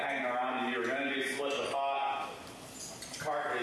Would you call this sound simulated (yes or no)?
no